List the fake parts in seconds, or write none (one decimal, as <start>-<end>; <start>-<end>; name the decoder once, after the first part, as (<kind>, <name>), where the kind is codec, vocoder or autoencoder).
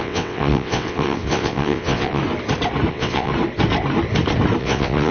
0.0-2.2 (vocoder, WaveNeXt); 2.9-3.3; 4.6-5.1